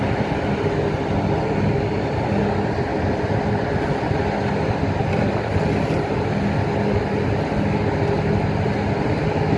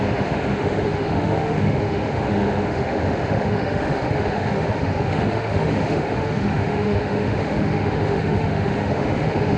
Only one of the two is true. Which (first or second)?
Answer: first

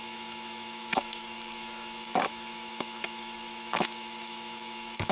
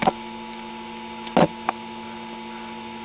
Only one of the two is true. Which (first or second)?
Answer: second